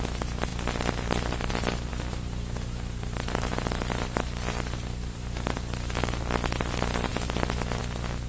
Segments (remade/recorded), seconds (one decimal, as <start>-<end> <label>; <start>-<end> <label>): 0.0-1.9 recorded; 1.9-6.2 remade; 6.2-8.3 recorded